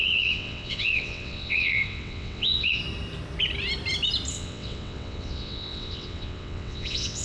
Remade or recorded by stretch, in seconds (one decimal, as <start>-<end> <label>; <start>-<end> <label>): 0.0-2.8 remade; 2.8-4.3 recorded; 4.3-7.2 remade